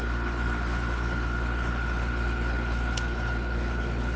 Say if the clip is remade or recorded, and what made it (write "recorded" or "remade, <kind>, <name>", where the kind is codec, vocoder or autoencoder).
remade, codec, HILCodec